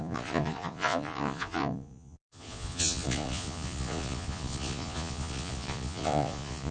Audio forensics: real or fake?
fake